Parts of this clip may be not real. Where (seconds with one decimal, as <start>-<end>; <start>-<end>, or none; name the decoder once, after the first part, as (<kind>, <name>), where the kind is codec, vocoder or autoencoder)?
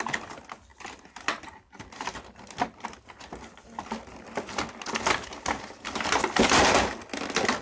none